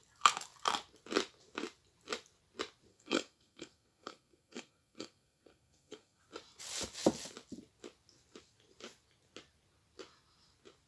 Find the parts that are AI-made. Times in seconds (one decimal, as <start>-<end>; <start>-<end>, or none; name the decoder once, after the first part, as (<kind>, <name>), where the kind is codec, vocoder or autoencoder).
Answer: 2.9-6.2 (codec, SNAC)